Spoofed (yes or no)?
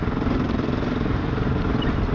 no